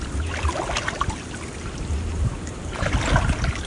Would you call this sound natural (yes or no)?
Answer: yes